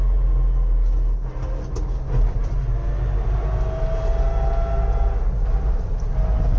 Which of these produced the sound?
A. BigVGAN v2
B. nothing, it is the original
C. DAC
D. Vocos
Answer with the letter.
B